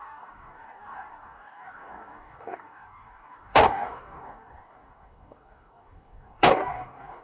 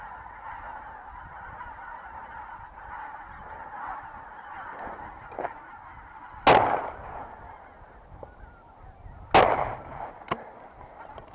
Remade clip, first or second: first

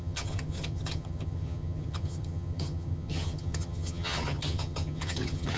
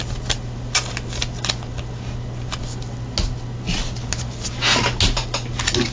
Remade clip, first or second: first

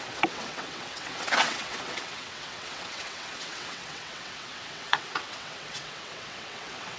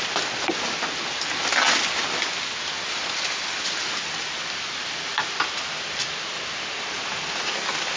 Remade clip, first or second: first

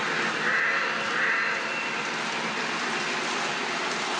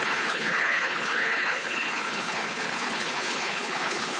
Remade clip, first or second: second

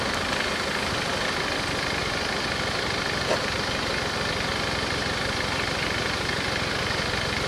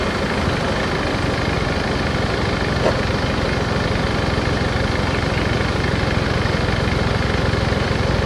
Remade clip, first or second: first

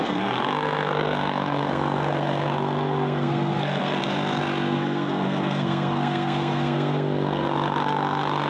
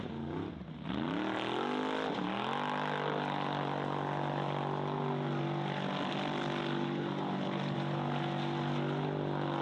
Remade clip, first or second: first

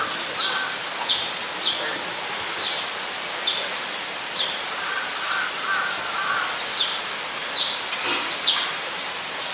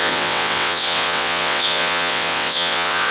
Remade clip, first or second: second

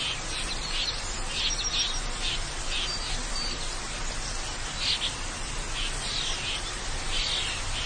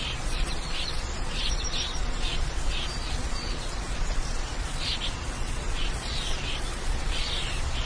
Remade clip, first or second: second